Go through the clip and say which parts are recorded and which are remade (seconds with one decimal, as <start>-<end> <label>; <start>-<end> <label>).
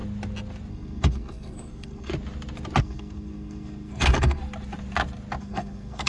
0.0-0.7 recorded; 0.7-2.1 remade; 2.1-2.8 recorded; 2.8-4.4 remade; 4.4-5.4 recorded; 5.4-6.1 remade